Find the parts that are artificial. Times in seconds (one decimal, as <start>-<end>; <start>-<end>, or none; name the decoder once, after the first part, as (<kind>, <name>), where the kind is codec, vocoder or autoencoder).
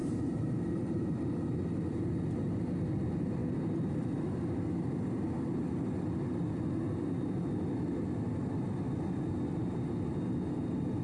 0.0-1.2 (vocoder, BigVGAN v2)